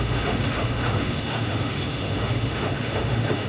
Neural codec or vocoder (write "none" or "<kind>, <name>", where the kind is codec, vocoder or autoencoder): autoencoder, DAC-VAE